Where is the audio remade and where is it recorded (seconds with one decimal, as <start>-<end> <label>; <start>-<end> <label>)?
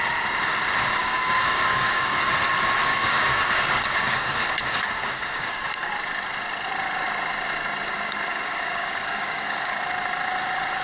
0.0-1.0 recorded; 1.0-2.3 remade; 2.3-2.9 recorded; 2.9-5.9 remade; 5.9-8.3 recorded; 8.3-9.8 remade; 9.8-10.8 recorded